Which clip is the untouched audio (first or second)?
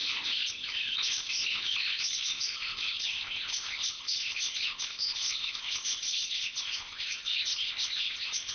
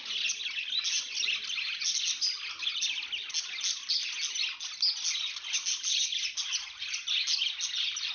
second